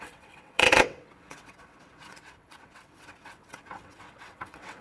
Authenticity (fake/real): fake